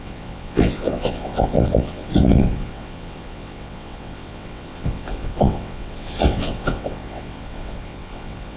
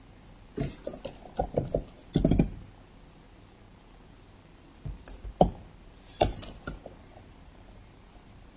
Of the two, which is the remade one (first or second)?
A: first